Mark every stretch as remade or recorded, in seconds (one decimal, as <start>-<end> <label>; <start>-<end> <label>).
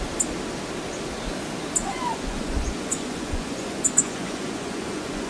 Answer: 0.0-1.8 recorded; 1.8-5.3 remade